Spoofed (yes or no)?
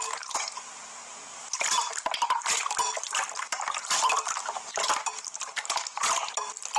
no